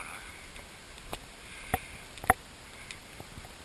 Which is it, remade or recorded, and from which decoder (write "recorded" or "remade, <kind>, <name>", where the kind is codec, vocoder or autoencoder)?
remade, vocoder, BigVGAN v2